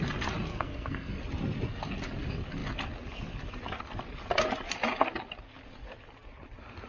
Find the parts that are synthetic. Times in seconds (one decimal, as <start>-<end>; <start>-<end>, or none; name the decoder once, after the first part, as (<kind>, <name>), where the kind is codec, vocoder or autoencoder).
0.5-1.2 (codec, SNAC)